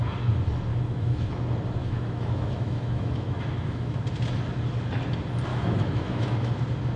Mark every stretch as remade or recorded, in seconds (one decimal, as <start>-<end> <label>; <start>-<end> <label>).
0.0-0.7 recorded; 0.7-1.3 remade; 1.3-1.8 recorded; 1.8-4.0 remade; 4.0-5.5 recorded; 5.5-6.5 remade; 6.5-7.0 recorded